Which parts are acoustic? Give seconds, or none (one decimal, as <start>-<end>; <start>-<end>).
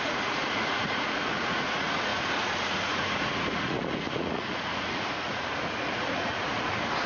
none